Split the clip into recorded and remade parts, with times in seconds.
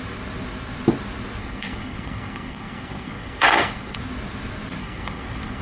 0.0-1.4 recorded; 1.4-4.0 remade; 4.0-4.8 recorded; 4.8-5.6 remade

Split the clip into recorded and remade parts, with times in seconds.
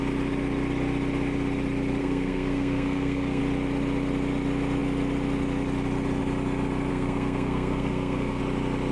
0.0-2.0 recorded; 2.0-3.4 remade; 3.4-6.9 recorded; 6.9-8.4 remade; 8.4-8.9 recorded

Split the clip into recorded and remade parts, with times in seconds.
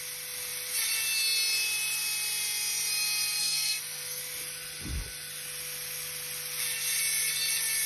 0.0-3.4 recorded; 3.4-4.2 remade; 4.2-7.9 recorded